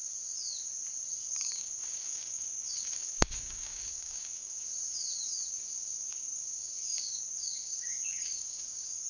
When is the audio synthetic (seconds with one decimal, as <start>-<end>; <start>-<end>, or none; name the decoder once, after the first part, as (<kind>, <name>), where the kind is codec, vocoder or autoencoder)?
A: 1.1-4.7 (codec, DAC); 5.5-9.1